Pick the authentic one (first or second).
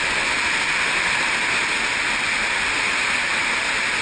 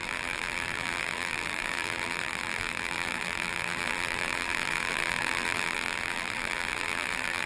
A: first